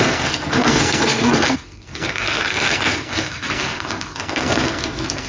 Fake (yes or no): yes